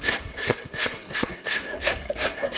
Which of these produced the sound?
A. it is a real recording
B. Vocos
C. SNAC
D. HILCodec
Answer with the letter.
C